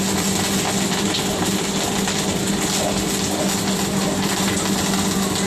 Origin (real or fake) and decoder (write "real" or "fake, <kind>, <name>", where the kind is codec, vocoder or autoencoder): real